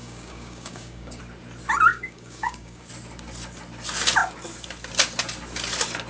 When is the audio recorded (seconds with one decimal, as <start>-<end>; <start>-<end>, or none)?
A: 1.2-1.9; 2.9-6.1